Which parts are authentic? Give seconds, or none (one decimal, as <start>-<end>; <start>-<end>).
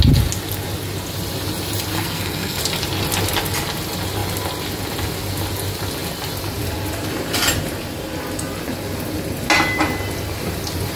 0.0-1.9; 2.6-11.0